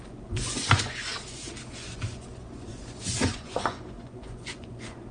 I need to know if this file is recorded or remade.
remade